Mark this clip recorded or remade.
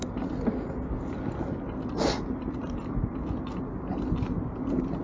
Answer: recorded